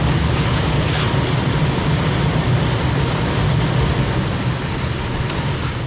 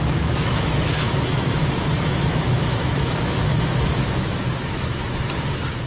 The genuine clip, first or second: first